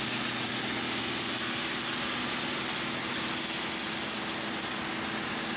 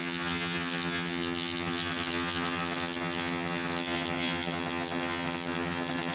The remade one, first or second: second